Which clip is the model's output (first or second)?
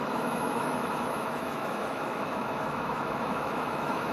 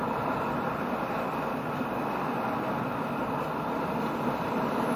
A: first